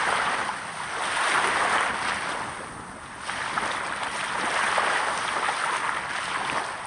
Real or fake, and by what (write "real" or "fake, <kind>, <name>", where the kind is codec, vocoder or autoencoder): real